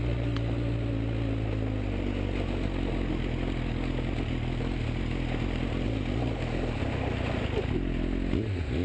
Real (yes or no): yes